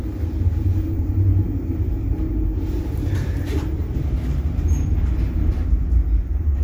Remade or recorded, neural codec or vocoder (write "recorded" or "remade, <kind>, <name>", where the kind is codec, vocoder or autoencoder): remade, vocoder, BigVGAN v2